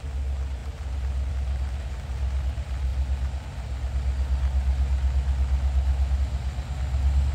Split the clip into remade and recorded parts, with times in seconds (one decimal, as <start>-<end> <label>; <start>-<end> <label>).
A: 0.0-7.3 recorded